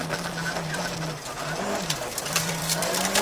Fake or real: fake